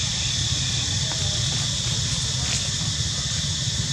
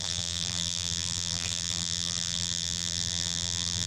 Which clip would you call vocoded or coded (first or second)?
second